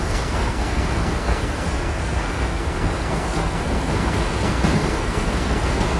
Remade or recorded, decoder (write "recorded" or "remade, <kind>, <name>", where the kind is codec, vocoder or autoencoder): remade, codec, SNAC